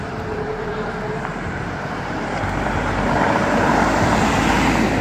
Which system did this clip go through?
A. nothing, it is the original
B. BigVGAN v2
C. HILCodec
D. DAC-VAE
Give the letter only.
B